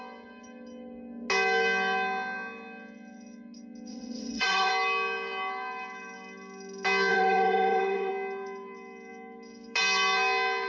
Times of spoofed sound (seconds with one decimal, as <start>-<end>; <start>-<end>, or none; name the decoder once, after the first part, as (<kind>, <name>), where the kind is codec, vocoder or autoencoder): 3.9-4.7 (vocoder, WaveNeXt); 7.1-8.1

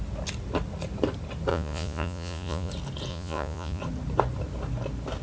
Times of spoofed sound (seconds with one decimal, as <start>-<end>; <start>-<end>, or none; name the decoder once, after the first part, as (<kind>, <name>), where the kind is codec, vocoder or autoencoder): 1.5-2.7 (vocoder, Vocos); 3.1-3.8

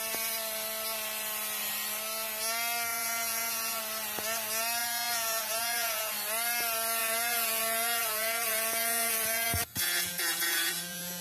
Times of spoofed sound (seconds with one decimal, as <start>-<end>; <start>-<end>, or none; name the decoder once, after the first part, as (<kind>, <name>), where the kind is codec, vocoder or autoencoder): 2.9-3.8 (vocoder, Vocos); 4.8-6.1; 7.0-11.2

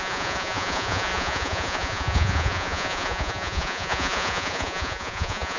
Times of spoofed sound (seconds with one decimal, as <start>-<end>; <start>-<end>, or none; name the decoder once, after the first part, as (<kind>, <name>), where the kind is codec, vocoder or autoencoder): 0.0-5.6 (vocoder, Vocos)